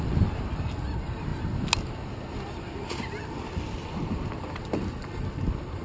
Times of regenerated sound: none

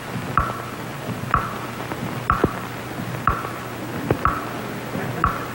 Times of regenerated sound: none

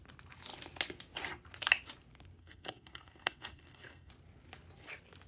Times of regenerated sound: 2.4-4.1

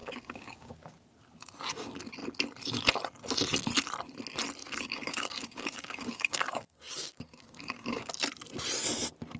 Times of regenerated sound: 0.0-0.7; 4.6-8.1

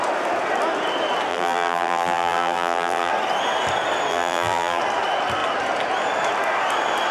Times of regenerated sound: 1.3-3.1; 4.1-4.8